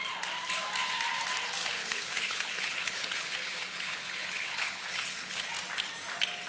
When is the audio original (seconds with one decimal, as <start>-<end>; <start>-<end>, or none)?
0.0-1.6; 5.5-6.5